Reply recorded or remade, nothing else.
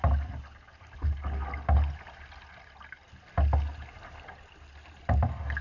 recorded